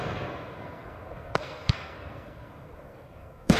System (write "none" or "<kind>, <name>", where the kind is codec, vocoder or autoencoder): codec, SNAC